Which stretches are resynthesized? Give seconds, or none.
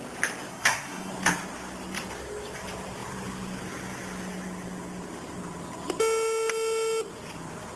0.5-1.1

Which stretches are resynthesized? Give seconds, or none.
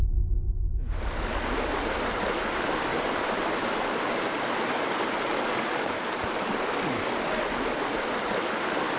2.9-4.2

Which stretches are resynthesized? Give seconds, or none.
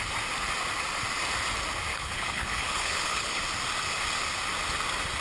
1.9-3.4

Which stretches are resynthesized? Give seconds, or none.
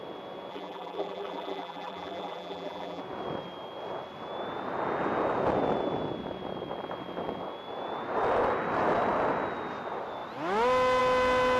0.5-3.0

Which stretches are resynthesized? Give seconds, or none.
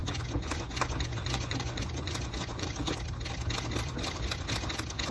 0.0-2.9